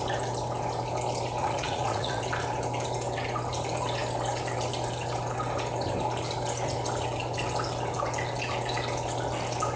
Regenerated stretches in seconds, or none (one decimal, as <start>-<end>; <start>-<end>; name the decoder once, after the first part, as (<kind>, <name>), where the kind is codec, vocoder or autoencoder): 1.4-2.2 (vocoder, Vocos)

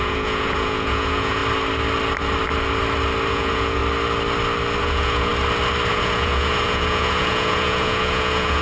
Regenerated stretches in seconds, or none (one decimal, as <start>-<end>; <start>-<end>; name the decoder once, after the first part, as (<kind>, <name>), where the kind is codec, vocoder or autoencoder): 0.0-1.4 (vocoder, Vocos); 3.3-3.8; 4.8-5.3; 5.9-8.6

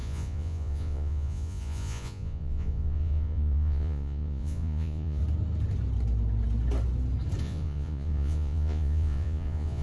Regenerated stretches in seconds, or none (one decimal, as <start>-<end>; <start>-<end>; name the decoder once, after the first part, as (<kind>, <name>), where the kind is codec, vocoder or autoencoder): 0.0-5.2 (vocoder, Vocos); 7.4-9.8

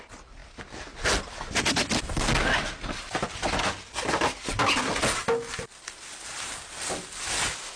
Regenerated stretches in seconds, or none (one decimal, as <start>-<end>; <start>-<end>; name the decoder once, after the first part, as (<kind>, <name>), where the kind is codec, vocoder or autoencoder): none

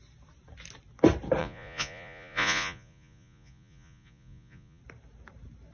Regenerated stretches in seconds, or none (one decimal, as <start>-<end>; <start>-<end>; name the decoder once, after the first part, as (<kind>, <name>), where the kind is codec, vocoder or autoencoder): 1.4-4.8 (vocoder, Vocos)

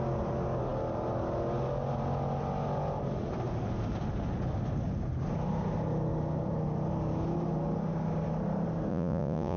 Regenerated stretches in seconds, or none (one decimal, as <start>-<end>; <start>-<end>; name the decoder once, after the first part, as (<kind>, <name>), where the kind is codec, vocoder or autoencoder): 8.9-9.6 (vocoder, Vocos)